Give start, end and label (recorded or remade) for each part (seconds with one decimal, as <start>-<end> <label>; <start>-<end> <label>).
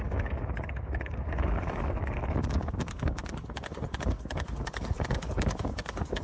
0.0-3.2 remade; 3.2-4.0 recorded; 4.0-6.2 remade